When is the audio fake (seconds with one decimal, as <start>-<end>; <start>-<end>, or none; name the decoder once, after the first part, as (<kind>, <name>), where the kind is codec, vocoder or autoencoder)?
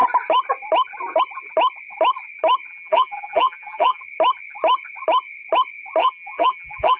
2.7-4.0 (vocoder, BigVGAN v2); 6.0-7.0